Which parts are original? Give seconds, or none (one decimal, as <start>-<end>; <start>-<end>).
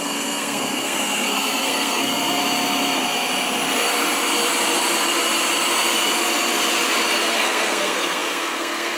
2.4-7.3